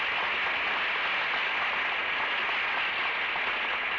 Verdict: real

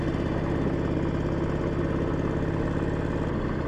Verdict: real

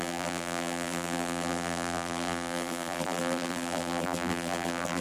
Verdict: fake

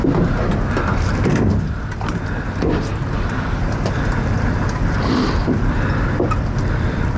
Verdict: fake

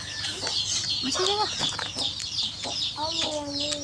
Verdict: real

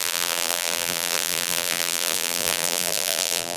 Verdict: fake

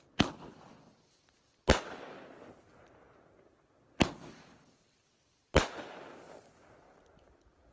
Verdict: real